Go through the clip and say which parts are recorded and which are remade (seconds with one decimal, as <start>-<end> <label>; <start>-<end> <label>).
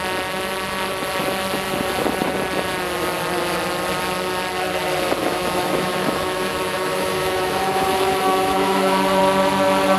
0.0-5.2 recorded; 5.2-9.2 remade; 9.2-10.0 recorded